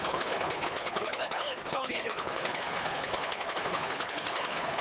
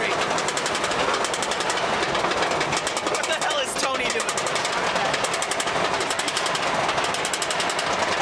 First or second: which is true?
second